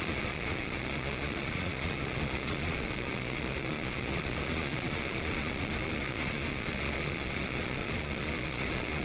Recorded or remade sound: remade